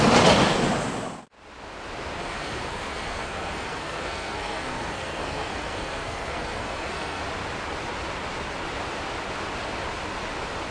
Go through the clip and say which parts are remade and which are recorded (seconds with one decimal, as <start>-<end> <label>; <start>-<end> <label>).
0.0-2.2 recorded; 2.2-7.2 remade; 7.2-10.7 recorded